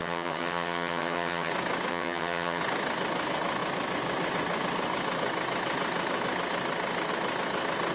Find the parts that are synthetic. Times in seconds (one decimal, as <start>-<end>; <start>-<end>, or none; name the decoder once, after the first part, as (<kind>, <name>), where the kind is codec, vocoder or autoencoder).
0.0-1.5 (vocoder, HiFi-GAN); 1.9-2.6